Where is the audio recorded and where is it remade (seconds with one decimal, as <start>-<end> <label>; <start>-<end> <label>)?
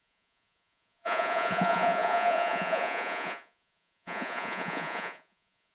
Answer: 0.0-5.7 remade